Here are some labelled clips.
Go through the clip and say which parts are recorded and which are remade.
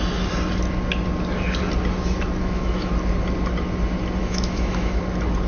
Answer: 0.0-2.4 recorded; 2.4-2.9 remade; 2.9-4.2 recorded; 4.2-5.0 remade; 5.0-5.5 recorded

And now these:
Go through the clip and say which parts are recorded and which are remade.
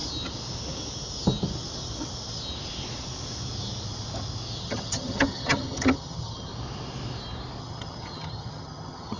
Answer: 0.0-4.6 recorded; 4.6-6.5 remade; 6.5-7.6 recorded; 7.6-9.2 remade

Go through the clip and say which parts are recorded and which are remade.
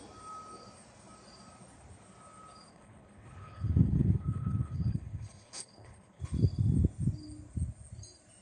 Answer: 0.0-2.7 recorded; 2.7-6.2 remade; 6.2-8.4 recorded